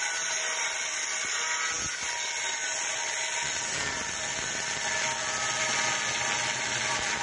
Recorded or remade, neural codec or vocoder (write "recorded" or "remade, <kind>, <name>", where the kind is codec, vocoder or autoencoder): recorded